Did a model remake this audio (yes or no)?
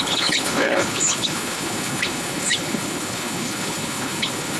yes